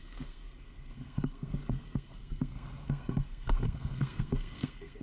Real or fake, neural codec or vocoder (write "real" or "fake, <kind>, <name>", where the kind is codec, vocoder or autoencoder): fake, codec, SNAC